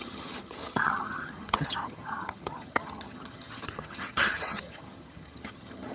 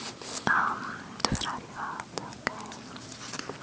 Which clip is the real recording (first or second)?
second